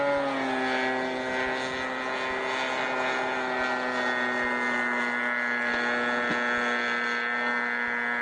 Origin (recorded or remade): recorded